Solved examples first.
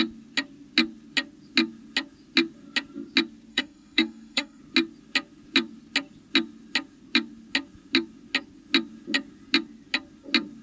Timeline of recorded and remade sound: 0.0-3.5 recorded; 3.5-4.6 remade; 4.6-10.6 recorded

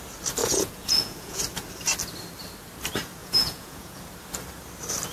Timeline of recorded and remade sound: 0.0-0.4 recorded; 0.4-1.4 remade; 1.4-3.2 recorded; 3.2-4.0 remade; 4.0-5.1 recorded

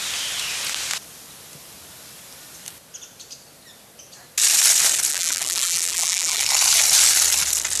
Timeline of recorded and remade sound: 0.0-5.1 recorded; 5.1-6.4 remade; 6.4-7.8 recorded

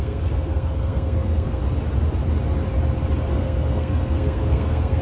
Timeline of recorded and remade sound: 0.0-1.6 remade; 1.6-3.3 recorded; 3.3-5.0 remade

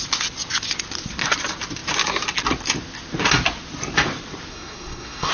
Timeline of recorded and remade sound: 0.0-4.5 recorded; 4.5-5.3 remade

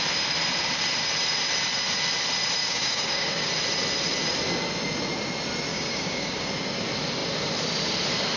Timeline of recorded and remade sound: 0.0-2.6 recorded; 2.6-3.5 remade; 3.5-5.7 recorded; 5.7-6.5 remade; 6.5-8.4 recorded

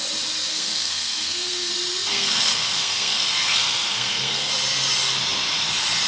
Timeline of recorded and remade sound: 0.0-0.5 recorded; 0.5-1.7 remade; 1.7-2.1 recorded; 2.1-4.5 remade; 4.5-6.1 recorded

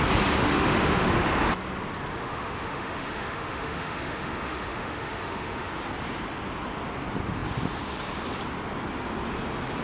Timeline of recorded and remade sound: 0.0-0.4 recorded; 0.4-1.1 remade; 1.1-2.1 recorded; 2.1-5.7 remade; 5.7-9.8 recorded